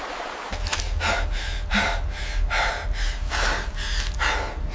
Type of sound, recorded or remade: recorded